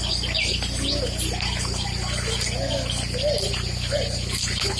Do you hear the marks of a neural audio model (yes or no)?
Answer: no